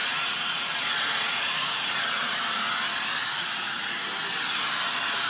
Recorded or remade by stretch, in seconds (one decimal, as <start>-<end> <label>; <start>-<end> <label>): 0.0-2.4 remade; 2.4-3.3 recorded; 3.3-3.9 remade; 3.9-5.3 recorded